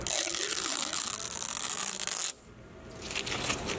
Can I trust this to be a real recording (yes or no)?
yes